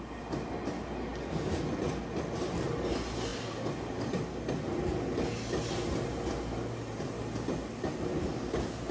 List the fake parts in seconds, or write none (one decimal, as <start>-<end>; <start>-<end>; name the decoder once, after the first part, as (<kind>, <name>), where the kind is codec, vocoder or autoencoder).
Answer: none